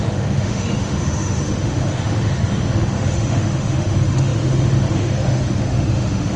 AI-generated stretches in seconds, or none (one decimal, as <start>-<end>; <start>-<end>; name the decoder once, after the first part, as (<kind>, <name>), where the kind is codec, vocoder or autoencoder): 0.0-6.4 (autoencoder, DAC-VAE)